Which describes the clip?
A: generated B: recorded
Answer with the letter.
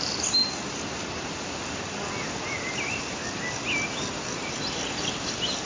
B